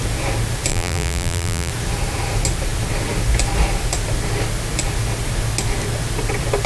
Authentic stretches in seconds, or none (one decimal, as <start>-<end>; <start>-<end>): 0.0-0.7; 1.7-6.7